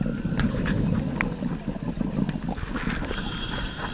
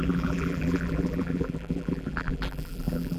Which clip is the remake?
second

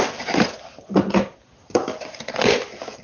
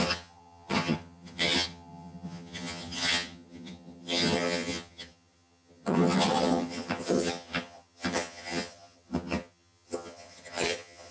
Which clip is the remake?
second